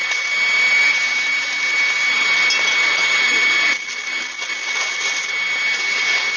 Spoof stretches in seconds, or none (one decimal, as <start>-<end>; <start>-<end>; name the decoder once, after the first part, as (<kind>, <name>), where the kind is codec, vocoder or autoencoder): none

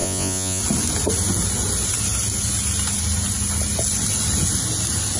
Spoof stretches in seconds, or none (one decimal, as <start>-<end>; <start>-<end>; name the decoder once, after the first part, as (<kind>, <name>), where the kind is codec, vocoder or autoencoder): 0.0-0.6 (vocoder, Vocos)

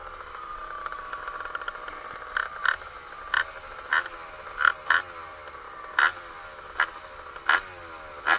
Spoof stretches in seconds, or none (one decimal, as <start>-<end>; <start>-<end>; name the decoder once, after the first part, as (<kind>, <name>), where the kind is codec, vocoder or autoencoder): none

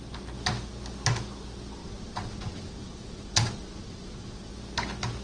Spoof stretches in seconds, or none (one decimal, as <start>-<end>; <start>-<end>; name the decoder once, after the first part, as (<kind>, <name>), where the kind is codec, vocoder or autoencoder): 1.8-4.5 (vocoder, Vocos)

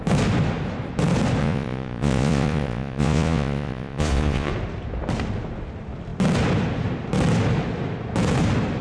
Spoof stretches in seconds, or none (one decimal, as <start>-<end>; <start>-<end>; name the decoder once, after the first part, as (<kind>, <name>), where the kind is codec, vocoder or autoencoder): 1.4-4.5 (vocoder, Vocos)